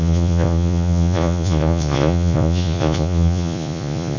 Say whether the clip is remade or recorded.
remade